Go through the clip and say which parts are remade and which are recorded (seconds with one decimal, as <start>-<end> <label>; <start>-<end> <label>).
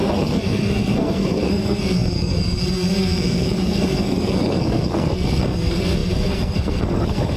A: 0.0-7.4 remade